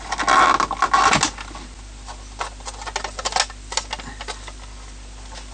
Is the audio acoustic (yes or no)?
yes